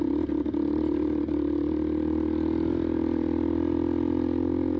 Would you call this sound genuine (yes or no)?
yes